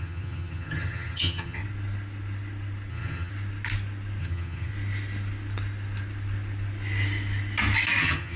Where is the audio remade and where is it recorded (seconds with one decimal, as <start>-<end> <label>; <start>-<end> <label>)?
0.0-1.6 remade; 1.6-2.9 recorded; 2.9-3.3 remade; 3.3-4.2 recorded; 4.2-4.7 remade; 4.7-8.0 recorded; 8.0-8.4 remade